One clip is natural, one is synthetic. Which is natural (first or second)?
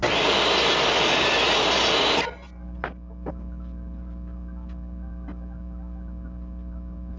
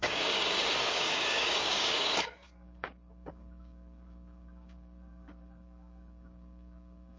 first